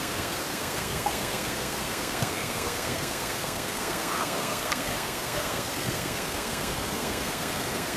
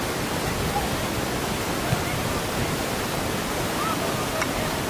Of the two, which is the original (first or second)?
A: second